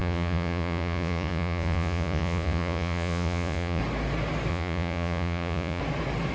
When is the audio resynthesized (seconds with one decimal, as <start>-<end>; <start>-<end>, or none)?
0.0-3.8; 4.5-5.8

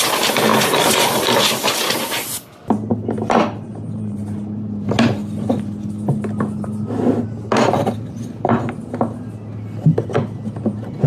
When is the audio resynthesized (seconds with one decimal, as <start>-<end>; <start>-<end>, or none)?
0.5-1.7

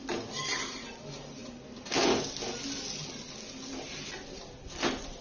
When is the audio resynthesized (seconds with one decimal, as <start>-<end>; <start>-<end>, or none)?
none

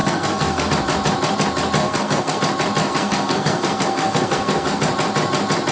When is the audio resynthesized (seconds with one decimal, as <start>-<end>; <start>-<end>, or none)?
0.0-0.7; 1.8-2.4; 2.8-4.8

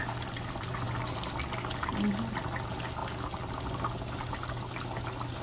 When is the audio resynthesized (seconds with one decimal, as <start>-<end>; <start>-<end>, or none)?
none

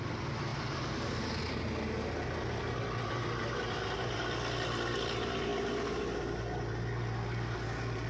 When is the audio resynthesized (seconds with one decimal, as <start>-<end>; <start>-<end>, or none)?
none